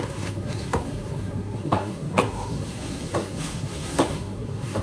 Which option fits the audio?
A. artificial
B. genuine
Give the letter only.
A